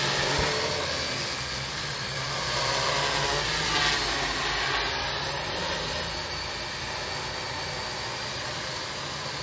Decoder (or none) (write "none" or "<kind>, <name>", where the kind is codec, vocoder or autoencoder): none